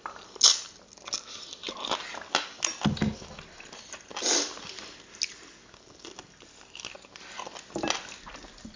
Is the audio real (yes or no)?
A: yes